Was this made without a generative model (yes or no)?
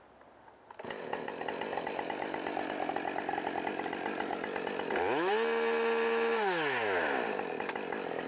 yes